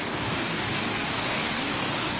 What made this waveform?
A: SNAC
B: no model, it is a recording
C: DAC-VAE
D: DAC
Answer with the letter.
D